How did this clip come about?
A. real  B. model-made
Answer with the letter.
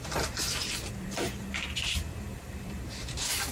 B